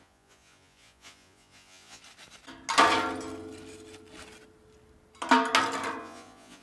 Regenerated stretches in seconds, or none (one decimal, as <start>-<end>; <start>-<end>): 0.0-2.0; 6.0-6.6